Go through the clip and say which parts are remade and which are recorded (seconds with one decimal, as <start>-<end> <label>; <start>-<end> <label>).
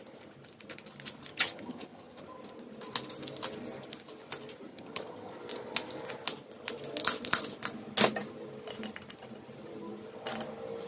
0.0-1.3 recorded; 1.3-2.2 remade; 2.2-4.7 recorded; 4.7-5.3 remade; 5.3-10.9 recorded